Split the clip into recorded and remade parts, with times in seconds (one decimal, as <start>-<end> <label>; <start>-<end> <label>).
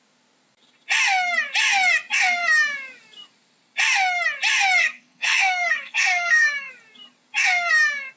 0.0-4.8 recorded; 4.8-6.7 remade; 6.7-8.2 recorded